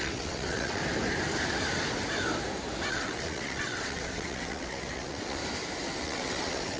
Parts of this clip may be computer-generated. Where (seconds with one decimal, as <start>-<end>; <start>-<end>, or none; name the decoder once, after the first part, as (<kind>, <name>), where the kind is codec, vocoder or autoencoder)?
0.0-0.8 (vocoder, WaveNeXt); 2.9-5.4; 6.0-6.8